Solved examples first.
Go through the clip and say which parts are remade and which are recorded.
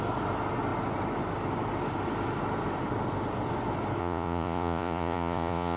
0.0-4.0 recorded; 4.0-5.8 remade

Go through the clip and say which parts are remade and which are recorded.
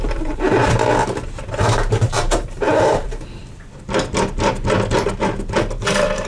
0.0-0.6 remade; 0.6-1.9 recorded; 1.9-3.4 remade; 3.4-5.8 recorded; 5.8-6.3 remade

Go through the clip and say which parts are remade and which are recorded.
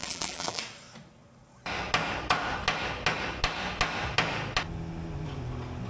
0.0-0.6 remade; 0.6-5.9 recorded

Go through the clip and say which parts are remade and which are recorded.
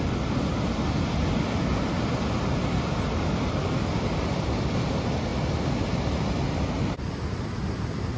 0.0-8.2 recorded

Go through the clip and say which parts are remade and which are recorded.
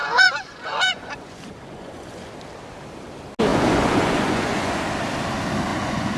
0.0-2.3 remade; 2.3-3.5 recorded; 3.5-4.8 remade; 4.8-5.7 recorded; 5.7-6.2 remade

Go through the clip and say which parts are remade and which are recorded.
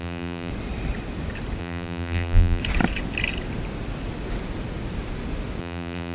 0.0-0.5 remade; 0.5-1.6 recorded; 1.6-2.6 remade; 2.6-5.6 recorded; 5.6-6.1 remade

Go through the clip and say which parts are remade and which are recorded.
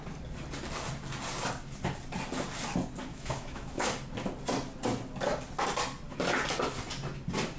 0.0-3.1 recorded; 3.1-3.9 remade; 3.9-7.6 recorded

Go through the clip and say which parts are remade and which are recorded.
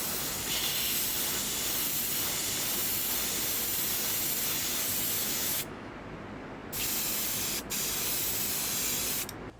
0.0-5.2 recorded; 5.2-5.9 remade; 5.9-9.6 recorded